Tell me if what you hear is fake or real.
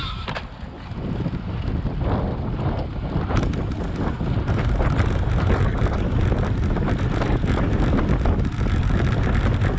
real